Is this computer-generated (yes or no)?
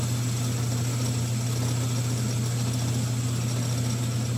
no